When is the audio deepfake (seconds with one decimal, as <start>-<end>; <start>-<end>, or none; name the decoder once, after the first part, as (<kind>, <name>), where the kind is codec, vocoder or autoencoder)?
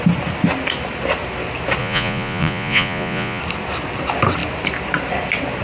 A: 1.8-3.4 (vocoder, Vocos)